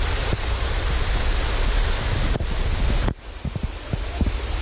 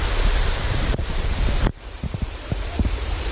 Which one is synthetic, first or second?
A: second